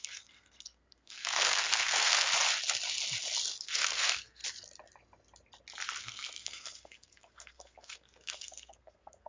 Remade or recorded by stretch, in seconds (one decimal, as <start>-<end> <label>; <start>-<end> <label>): 0.0-2.3 remade; 2.3-3.6 recorded; 3.6-4.4 remade; 4.4-6.0 recorded; 6.0-9.3 remade